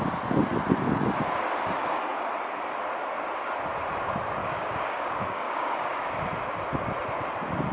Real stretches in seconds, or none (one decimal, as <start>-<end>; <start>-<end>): 0.0-4.4; 6.1-7.7